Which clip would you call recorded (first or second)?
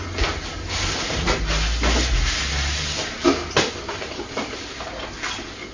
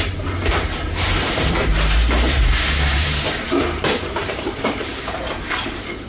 first